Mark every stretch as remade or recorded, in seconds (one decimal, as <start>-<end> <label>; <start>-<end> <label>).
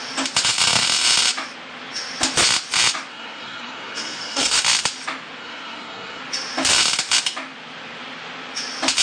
0.0-3.1 recorded; 3.1-4.6 remade; 4.6-5.4 recorded; 5.4-6.2 remade; 6.2-9.0 recorded